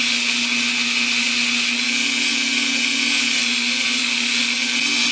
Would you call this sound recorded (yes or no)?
yes